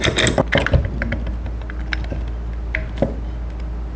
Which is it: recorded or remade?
recorded